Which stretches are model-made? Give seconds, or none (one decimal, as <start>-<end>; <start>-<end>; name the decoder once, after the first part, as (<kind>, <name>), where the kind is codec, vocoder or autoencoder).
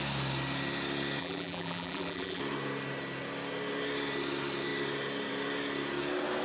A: 1.2-2.4 (vocoder, BigVGAN v2)